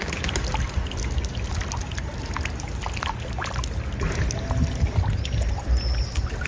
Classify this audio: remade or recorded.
recorded